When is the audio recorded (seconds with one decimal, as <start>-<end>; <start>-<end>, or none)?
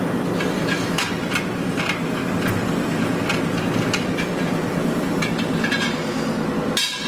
0.0-0.6; 1.1-7.1